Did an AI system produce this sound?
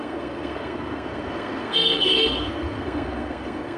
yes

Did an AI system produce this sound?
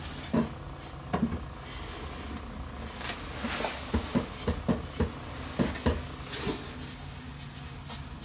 no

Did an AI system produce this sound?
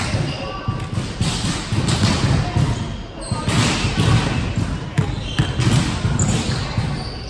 no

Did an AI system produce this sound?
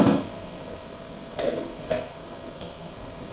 yes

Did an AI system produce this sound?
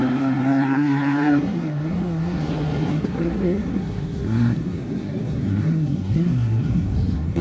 yes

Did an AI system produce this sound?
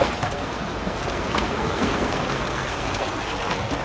yes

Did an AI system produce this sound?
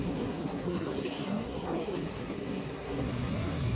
yes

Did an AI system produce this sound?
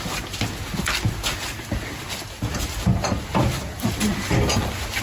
no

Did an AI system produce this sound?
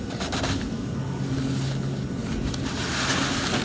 no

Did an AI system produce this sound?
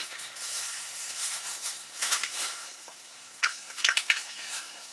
yes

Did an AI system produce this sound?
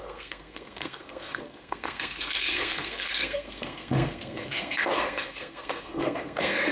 yes